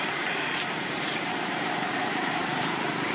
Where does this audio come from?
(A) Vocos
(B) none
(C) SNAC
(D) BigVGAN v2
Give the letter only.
D